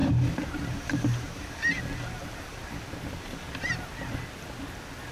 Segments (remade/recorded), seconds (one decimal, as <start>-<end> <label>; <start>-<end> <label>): 0.0-1.8 remade; 1.8-2.2 recorded; 2.2-2.8 remade; 2.8-5.1 recorded